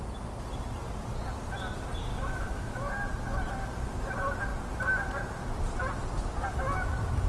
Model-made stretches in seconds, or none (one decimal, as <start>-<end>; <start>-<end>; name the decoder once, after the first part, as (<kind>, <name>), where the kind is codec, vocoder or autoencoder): 2.1-2.9 (autoencoder, DAC-VAE)